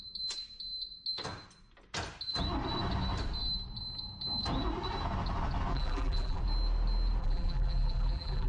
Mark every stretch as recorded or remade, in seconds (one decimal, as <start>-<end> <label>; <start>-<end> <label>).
0.0-5.7 recorded; 5.7-6.4 remade; 6.4-7.2 recorded; 7.2-8.5 remade